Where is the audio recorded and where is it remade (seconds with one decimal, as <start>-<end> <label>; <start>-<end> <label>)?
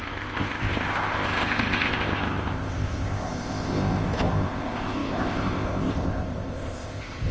0.0-7.3 remade